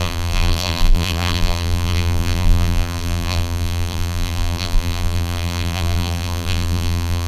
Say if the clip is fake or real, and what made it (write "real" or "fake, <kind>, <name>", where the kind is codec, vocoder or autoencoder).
fake, vocoder, BigVGAN v2